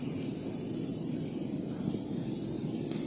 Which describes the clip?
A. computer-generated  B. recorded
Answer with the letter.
B